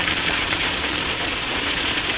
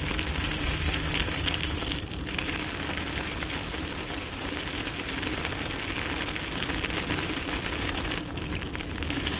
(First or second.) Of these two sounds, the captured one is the second